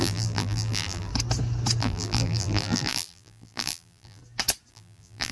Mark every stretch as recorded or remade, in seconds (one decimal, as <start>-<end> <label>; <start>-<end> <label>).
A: 0.0-1.1 remade; 1.1-1.8 recorded; 1.8-4.2 remade; 4.2-4.7 recorded; 4.7-5.3 remade